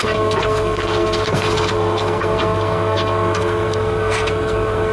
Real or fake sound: fake